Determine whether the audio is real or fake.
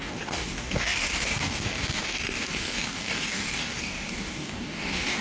fake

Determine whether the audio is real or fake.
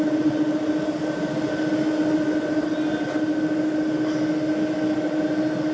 real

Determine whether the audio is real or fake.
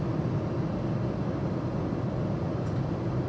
real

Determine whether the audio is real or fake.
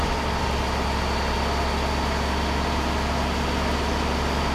real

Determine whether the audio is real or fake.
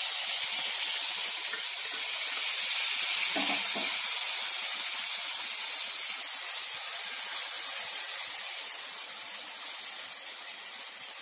real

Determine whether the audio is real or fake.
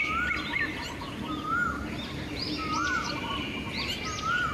real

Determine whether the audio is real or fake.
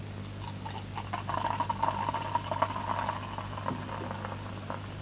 real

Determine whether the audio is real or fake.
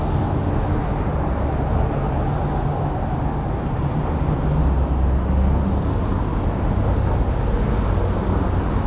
real